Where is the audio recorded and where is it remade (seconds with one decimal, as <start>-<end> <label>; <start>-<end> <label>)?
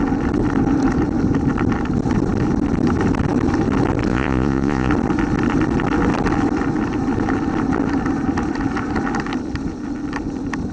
0.0-4.1 recorded; 4.1-4.9 remade; 4.9-10.7 recorded